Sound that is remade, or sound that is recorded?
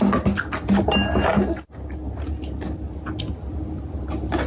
recorded